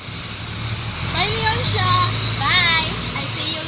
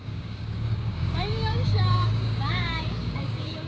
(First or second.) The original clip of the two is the first